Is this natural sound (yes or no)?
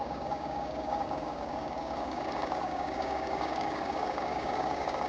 no